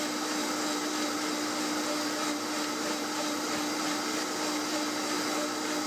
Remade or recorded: recorded